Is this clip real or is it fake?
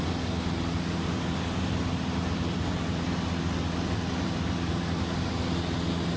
real